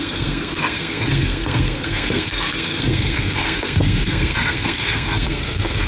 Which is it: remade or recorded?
remade